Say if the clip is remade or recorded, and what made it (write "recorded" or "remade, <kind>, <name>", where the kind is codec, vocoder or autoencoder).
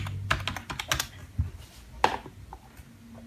recorded